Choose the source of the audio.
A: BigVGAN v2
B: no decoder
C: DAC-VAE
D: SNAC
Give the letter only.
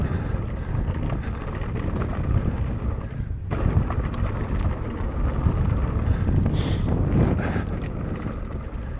B